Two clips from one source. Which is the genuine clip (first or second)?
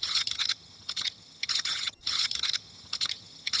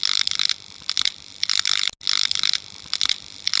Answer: second